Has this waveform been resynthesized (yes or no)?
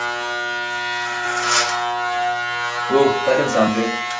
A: no